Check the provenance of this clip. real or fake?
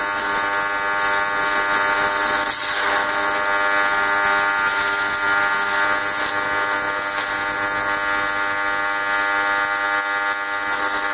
real